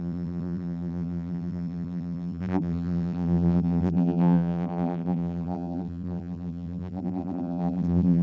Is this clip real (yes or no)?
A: no